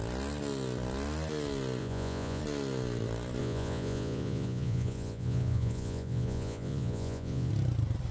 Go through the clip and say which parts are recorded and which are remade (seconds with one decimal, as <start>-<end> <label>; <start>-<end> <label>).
0.0-1.8 recorded; 1.8-2.4 remade; 2.4-3.4 recorded; 3.4-7.5 remade; 7.5-8.1 recorded